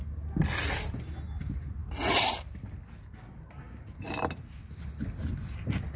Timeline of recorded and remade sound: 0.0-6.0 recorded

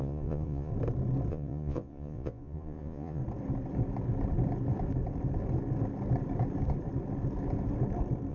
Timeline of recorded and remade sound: 0.0-0.7 remade; 0.7-1.3 recorded; 1.3-3.2 remade; 3.2-8.3 recorded

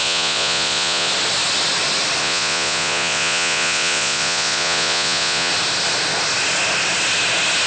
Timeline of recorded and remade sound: 0.0-1.1 remade; 1.1-2.2 recorded; 2.2-5.5 remade; 5.5-7.7 recorded

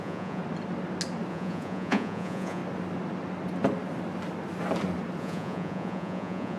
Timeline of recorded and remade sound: 0.0-0.4 remade; 0.4-1.3 recorded; 1.3-2.6 remade; 2.6-5.2 recorded; 5.2-6.6 remade